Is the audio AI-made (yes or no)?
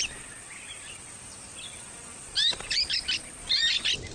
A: no